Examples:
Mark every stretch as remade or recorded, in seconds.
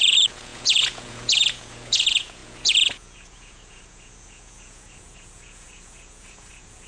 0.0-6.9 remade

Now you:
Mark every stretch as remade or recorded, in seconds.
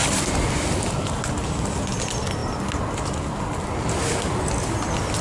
0.0-5.2 recorded